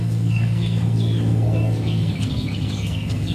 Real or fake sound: fake